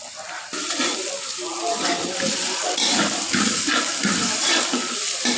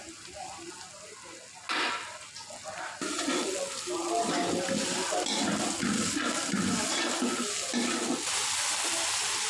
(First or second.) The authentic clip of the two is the second